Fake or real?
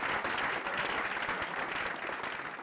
real